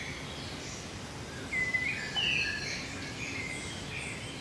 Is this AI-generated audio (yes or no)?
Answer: no